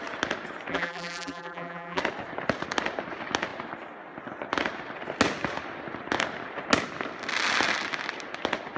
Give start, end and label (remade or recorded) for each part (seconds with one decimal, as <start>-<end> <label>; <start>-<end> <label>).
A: 0.0-0.7 recorded; 0.7-2.0 remade; 2.0-8.8 recorded